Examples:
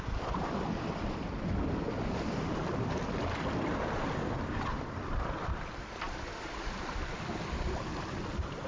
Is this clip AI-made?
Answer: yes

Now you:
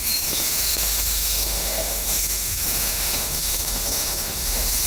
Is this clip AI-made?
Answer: yes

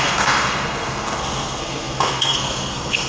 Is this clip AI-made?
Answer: yes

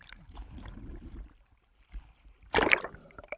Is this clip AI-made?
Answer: yes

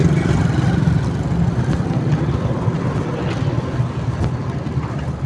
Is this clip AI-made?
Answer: no